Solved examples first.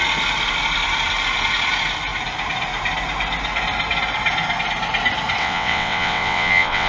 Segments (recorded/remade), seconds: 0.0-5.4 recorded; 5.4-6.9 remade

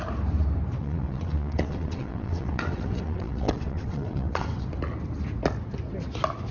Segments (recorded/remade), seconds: 0.0-0.8 recorded; 0.8-4.7 remade; 4.7-6.5 recorded

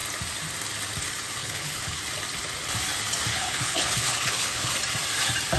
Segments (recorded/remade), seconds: 0.0-1.4 recorded; 1.4-2.0 remade; 2.0-3.3 recorded; 3.3-4.7 remade; 4.7-5.6 recorded

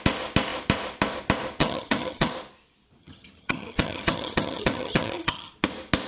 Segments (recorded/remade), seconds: 0.0-1.6 recorded; 1.6-2.3 remade; 2.3-3.0 recorded; 3.0-5.5 remade; 5.5-6.1 recorded

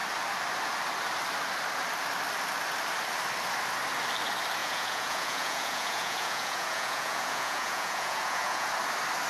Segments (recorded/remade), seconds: 0.0-4.6 recorded; 4.6-8.7 remade; 8.7-9.3 recorded

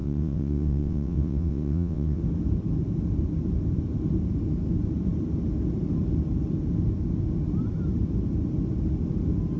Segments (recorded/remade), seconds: 0.0-2.2 remade; 2.2-9.6 recorded

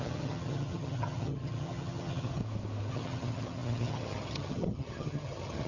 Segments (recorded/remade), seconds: 0.0-2.4 remade; 2.4-2.9 recorded; 2.9-5.7 remade

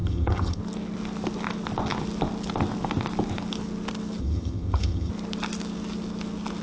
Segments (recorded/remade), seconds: 0.0-0.6 remade; 0.6-4.2 recorded; 4.2-5.1 remade; 5.1-6.6 recorded